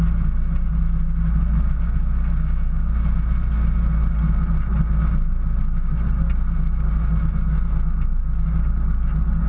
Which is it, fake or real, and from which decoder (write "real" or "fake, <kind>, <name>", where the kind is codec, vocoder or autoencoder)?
real